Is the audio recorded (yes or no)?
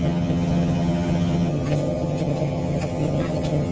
no